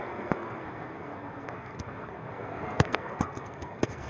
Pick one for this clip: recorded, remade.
remade